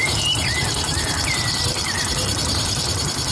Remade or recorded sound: remade